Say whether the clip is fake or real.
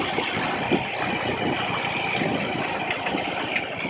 real